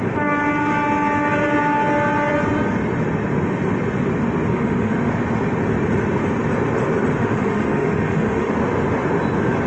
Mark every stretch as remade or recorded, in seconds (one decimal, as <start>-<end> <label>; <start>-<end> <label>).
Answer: 0.0-4.5 recorded; 4.5-5.1 remade; 5.1-7.2 recorded; 7.2-8.5 remade; 8.5-9.7 recorded